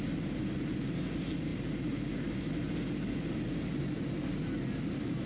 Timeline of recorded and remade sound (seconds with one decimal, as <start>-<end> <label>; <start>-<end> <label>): 0.0-5.3 recorded